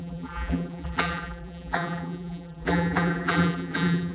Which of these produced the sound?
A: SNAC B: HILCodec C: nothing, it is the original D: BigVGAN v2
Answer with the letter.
D